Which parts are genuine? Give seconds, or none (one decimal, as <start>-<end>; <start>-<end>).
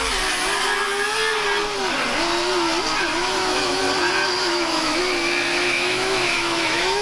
0.0-3.2; 3.8-4.4; 5.0-5.5